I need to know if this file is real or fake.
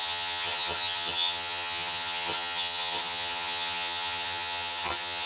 fake